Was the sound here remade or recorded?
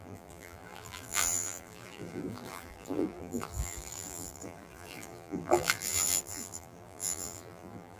remade